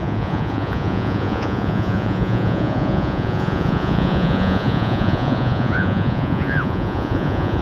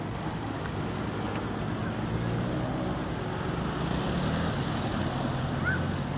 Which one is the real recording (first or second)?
second